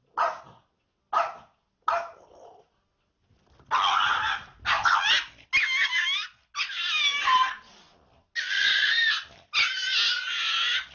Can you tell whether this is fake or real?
real